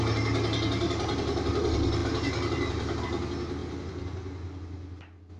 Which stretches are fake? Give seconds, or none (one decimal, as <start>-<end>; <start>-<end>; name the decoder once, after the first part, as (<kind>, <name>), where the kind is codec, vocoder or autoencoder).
none